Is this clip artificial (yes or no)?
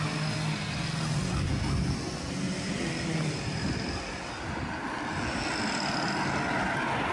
no